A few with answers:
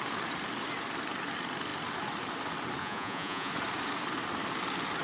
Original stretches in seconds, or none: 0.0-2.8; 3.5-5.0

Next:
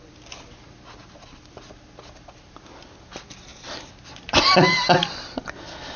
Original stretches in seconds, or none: 0.0-6.0